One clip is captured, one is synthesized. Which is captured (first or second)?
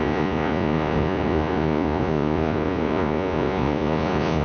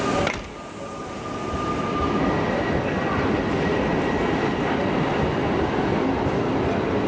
second